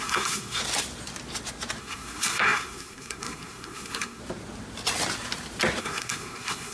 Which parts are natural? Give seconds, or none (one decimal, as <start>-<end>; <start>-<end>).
0.6-1.8; 4.2-5.8

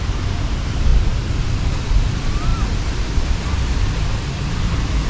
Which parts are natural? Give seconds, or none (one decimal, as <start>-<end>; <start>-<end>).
0.0-5.1

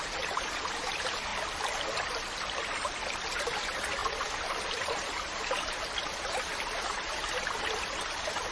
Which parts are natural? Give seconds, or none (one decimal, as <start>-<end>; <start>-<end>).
1.3-3.4

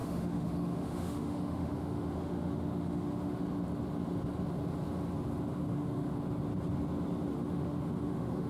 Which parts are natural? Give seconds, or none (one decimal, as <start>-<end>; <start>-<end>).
3.4-5.6; 6.2-7.3

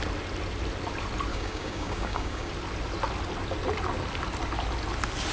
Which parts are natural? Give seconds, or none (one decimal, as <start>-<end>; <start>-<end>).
0.0-1.3; 2.5-5.3